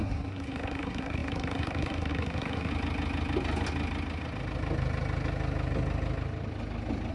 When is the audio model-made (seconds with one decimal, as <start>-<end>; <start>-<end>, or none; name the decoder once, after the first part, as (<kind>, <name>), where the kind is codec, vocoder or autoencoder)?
0.0-2.7 (codec, SNAC)